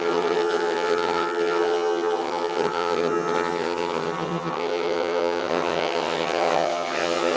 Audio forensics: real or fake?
fake